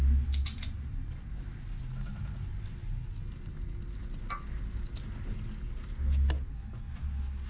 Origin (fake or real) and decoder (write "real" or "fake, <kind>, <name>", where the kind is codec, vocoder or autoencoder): real